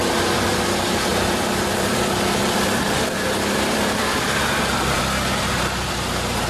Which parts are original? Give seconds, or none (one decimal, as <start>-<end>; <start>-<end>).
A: 0.0-1.1; 5.0-6.5